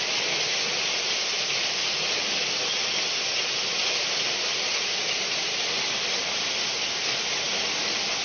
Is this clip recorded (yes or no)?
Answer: yes